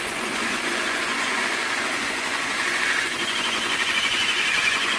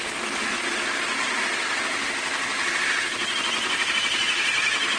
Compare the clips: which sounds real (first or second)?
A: second